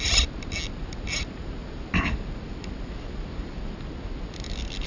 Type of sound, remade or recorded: recorded